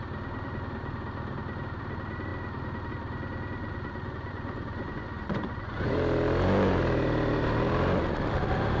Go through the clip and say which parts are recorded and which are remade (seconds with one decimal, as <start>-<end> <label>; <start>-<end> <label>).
0.0-3.6 recorded; 3.6-5.9 remade; 5.9-8.8 recorded